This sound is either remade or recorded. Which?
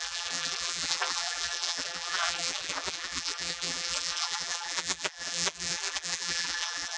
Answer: remade